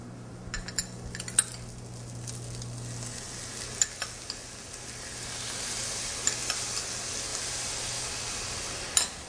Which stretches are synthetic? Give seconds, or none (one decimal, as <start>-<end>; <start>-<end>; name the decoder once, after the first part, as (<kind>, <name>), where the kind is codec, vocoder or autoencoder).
none